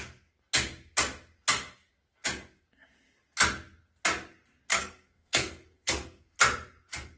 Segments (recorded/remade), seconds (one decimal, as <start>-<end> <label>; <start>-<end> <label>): 0.0-4.7 recorded; 4.7-6.4 remade; 6.4-7.2 recorded